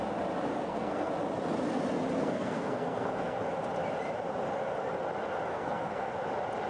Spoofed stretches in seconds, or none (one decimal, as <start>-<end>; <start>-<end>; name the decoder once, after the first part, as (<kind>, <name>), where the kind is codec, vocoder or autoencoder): 0.5-1.1 (codec, SNAC); 2.2-3.5; 5.5-6.1

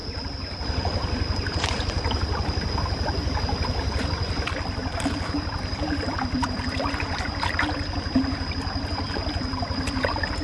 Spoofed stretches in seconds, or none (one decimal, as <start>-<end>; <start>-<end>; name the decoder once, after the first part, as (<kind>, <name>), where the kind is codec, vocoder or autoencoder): none

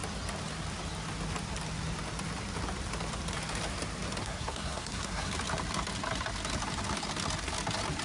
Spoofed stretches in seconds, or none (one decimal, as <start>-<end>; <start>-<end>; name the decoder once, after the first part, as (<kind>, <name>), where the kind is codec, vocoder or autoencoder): 4.2-5.3 (codec, SNAC)

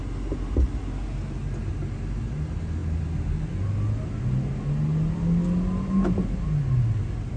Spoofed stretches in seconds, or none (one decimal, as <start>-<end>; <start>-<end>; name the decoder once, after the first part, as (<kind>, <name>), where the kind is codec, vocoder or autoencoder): none

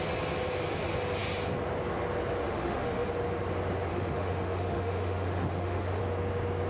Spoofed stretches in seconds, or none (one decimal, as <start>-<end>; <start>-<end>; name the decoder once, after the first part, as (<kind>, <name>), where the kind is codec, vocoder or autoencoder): 2.4-3.1 (autoencoder, DAC-VAE); 3.9-6.0

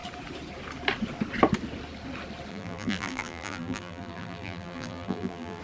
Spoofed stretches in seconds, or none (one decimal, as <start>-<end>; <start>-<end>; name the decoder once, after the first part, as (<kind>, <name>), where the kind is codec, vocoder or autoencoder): 2.5-5.6 (vocoder, BigVGAN v2)

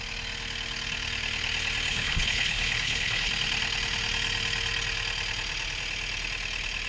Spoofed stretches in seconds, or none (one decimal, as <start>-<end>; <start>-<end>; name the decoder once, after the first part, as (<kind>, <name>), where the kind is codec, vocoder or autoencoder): 1.9-3.3 (codec, HILCodec)

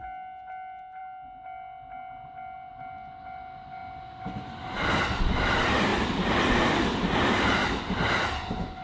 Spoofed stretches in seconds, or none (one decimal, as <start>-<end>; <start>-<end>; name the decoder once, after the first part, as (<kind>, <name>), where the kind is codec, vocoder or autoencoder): none